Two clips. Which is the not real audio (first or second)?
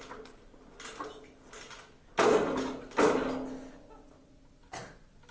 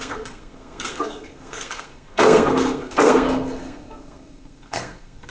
second